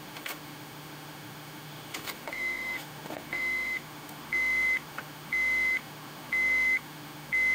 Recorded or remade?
remade